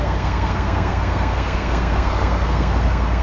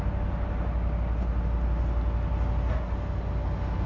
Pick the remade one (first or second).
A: first